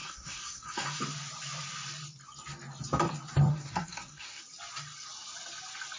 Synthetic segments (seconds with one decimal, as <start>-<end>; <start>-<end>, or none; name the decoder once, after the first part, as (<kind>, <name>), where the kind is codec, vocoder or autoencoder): 0.0-1.0 (codec, SNAC); 3.5-4.4